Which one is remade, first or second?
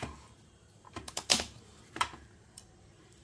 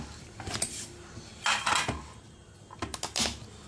first